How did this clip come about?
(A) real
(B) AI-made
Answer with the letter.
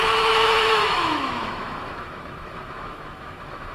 B